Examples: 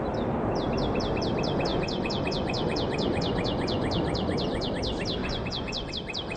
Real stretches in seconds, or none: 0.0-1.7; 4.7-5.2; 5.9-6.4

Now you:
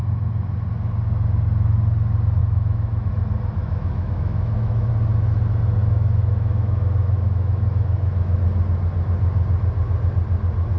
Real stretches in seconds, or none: 0.0-2.4; 3.1-3.6; 4.9-5.8; 8.4-10.8

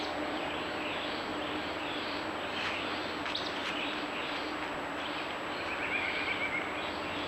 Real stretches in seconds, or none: 0.0-1.3; 2.2-7.3

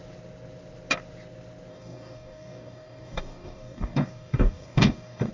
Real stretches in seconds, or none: 0.0-1.7